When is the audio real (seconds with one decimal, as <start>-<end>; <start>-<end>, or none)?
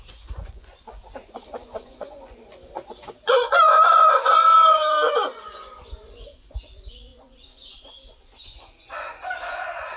none